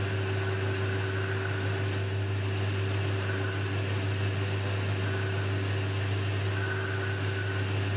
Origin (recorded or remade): recorded